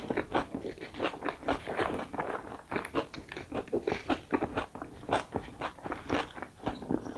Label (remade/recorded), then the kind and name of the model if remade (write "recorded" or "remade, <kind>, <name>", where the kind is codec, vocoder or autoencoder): recorded